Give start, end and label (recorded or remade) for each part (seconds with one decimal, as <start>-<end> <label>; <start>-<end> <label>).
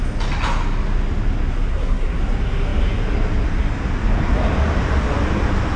0.0-1.7 recorded; 1.7-2.2 remade; 2.2-5.8 recorded